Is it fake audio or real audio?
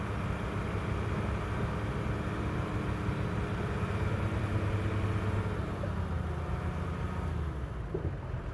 real